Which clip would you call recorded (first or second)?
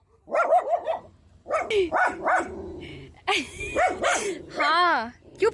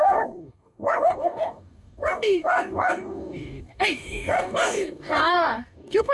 first